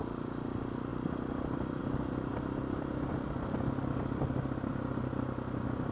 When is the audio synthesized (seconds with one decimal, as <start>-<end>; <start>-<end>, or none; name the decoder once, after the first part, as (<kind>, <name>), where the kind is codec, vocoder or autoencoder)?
0.9-1.8 (vocoder, BigVGAN v2); 2.3-4.7